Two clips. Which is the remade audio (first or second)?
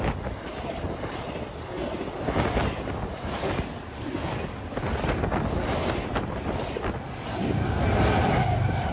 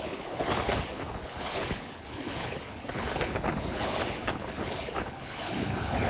second